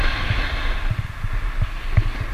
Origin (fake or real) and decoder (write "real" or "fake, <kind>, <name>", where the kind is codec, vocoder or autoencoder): real